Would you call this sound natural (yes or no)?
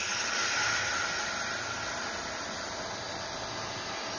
yes